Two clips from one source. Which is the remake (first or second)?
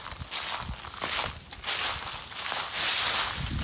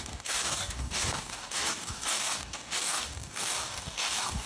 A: second